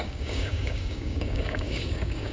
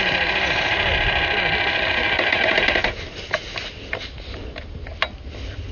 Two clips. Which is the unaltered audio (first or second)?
second